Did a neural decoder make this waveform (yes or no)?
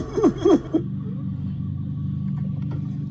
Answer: no